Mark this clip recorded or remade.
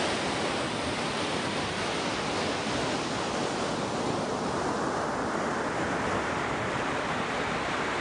recorded